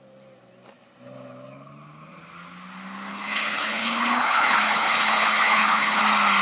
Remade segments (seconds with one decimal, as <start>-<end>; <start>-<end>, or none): 3.1-6.0